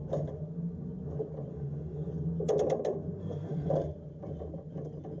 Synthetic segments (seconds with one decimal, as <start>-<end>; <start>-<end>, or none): 1.5-2.1; 3.2-3.7